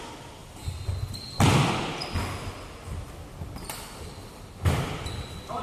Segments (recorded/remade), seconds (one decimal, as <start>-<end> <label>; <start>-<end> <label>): 0.0-5.6 recorded